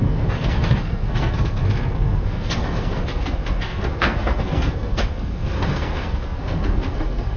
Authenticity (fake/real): fake